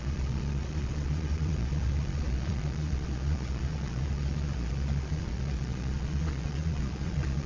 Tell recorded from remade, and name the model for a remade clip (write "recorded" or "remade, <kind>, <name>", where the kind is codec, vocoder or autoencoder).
remade, vocoder, Vocos